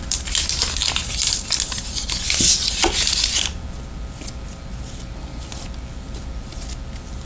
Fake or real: real